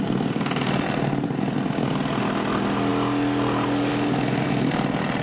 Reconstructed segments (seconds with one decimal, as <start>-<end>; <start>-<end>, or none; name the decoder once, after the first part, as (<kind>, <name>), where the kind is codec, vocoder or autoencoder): none